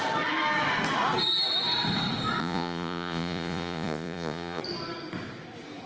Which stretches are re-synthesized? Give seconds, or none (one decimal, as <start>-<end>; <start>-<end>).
2.4-4.6